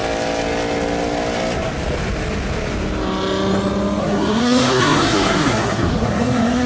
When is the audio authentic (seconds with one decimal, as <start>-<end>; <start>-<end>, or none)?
0.0-4.0